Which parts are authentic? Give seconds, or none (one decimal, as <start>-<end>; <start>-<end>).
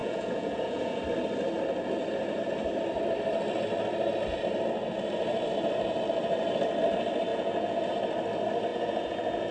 1.0-7.3; 7.9-8.7